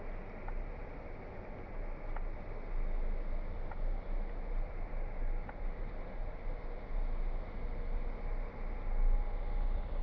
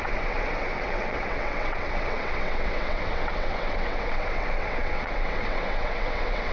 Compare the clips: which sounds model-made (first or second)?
second